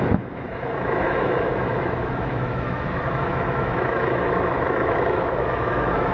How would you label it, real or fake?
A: fake